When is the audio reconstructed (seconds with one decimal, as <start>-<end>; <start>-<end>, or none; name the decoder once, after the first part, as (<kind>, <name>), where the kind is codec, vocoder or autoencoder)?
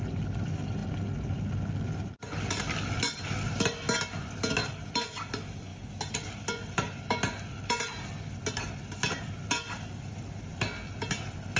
none